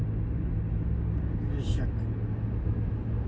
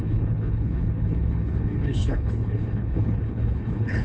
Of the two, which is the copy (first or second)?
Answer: second